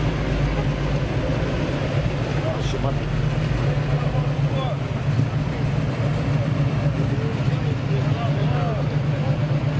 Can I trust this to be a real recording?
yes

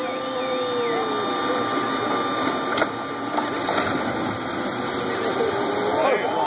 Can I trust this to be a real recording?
yes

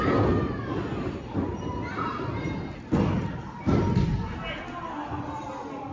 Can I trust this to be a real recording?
yes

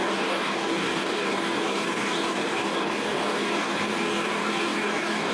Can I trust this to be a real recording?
no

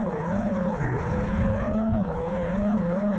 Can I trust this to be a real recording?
no